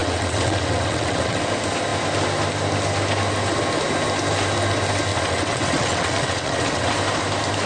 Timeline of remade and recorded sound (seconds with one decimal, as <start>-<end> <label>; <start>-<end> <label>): 0.0-1.4 remade; 1.4-5.1 recorded; 5.1-6.9 remade; 6.9-7.7 recorded